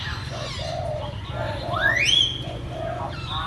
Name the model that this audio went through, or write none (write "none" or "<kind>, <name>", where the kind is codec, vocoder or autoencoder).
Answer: vocoder, Vocos